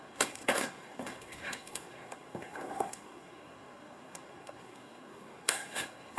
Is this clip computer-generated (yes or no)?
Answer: yes